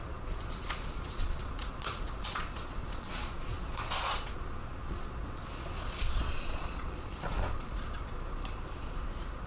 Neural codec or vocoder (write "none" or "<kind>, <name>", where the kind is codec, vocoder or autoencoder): vocoder, Vocos